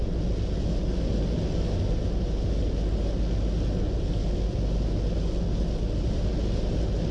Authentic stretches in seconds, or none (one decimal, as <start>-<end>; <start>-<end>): 0.0-7.1